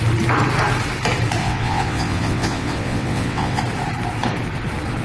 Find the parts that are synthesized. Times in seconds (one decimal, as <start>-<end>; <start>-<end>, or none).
1.4-3.6